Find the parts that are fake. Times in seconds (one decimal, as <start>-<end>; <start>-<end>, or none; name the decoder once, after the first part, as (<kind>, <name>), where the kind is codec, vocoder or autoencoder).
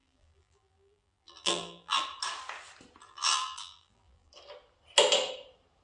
0.0-2.0 (vocoder, BigVGAN v2); 3.0-4.3